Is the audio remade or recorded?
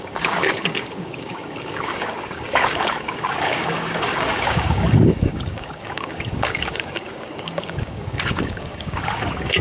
remade